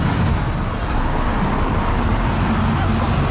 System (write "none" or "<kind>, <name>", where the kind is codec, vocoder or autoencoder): none